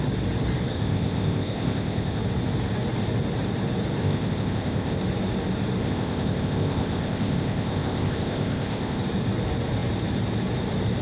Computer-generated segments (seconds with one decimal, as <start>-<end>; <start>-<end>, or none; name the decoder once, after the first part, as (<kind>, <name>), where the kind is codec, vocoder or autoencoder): 0.7-2.2 (codec, ZipCodec); 4.0-5.0; 5.8-9.0